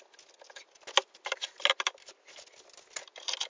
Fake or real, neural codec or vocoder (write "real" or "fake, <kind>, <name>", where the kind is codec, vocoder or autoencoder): real